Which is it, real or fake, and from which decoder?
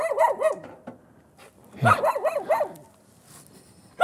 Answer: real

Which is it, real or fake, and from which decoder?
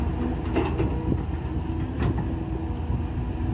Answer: real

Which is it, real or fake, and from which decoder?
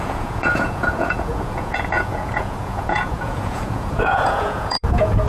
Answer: fake, vocoder, Vocos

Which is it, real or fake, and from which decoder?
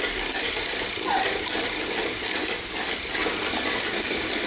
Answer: real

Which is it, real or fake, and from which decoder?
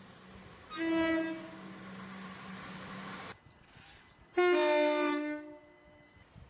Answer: real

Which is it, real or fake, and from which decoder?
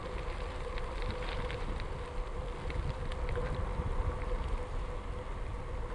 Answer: fake, vocoder, BigVGAN v2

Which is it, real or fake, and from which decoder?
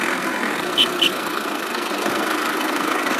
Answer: fake, codec, SNAC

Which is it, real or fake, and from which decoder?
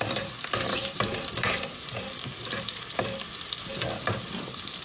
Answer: real